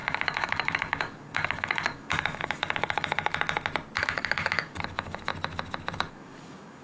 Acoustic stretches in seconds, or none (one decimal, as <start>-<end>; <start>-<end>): 3.3-4.0; 5.3-6.1